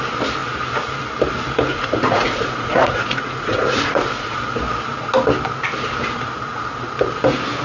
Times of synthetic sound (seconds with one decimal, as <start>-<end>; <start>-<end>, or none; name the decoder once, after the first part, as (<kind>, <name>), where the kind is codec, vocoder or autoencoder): 1.7-4.4 (vocoder, Vocos)